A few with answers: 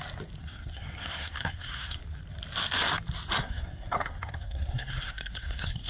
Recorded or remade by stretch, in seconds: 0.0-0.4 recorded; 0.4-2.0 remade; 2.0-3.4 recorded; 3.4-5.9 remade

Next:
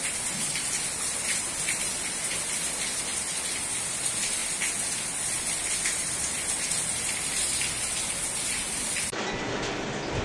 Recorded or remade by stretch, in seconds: 0.0-10.2 recorded